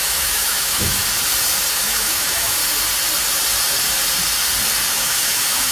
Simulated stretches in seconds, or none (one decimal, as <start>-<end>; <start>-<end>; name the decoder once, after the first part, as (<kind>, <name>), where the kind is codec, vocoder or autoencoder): 0.0-1.0 (autoencoder, DAC-VAE); 1.7-2.6; 4.9-5.7